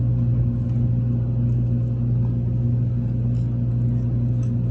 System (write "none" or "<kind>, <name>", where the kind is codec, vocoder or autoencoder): none